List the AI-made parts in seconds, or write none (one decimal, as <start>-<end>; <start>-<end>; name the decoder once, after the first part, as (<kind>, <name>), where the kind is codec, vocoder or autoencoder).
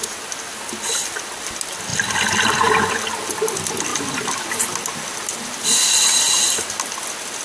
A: none